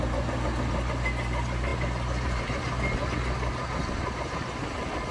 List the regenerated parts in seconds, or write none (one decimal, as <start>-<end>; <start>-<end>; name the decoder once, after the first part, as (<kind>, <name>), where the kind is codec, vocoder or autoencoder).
none